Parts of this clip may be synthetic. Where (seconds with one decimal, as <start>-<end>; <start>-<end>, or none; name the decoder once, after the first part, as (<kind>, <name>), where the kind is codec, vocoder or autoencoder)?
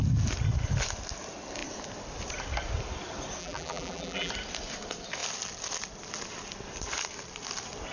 3.4-4.3 (vocoder, BigVGAN v2)